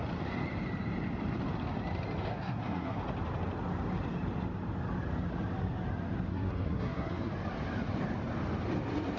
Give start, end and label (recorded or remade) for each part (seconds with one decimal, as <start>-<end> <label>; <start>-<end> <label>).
0.0-2.3 recorded; 2.3-3.0 remade; 3.0-6.3 recorded; 6.3-7.3 remade; 7.3-9.2 recorded